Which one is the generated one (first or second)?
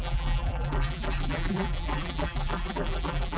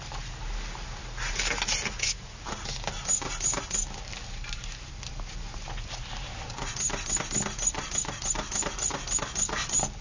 first